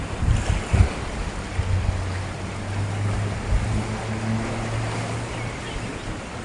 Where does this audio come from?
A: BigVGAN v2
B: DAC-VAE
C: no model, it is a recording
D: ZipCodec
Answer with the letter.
C